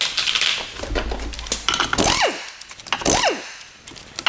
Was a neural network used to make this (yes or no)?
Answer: no